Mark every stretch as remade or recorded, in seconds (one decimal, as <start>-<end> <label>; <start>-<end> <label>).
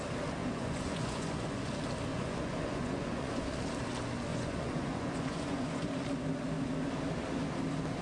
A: 0.0-0.4 recorded; 0.4-1.7 remade; 1.7-2.1 recorded; 2.1-3.6 remade; 3.6-4.3 recorded; 4.3-5.9 remade; 5.9-8.0 recorded